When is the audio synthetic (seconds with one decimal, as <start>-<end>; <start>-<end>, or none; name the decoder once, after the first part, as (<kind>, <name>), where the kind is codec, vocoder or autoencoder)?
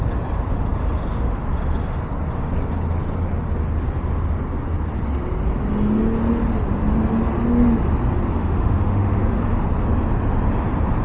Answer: 8.4-9.4 (autoencoder, DAC-VAE)